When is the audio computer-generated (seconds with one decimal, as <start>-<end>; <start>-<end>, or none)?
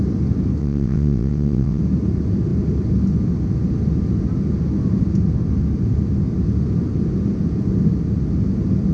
0.6-1.8